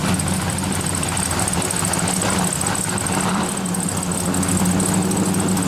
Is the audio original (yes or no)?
yes